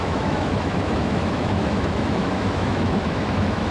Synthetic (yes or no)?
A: yes